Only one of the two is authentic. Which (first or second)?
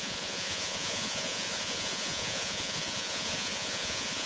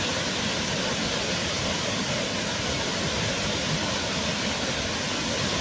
second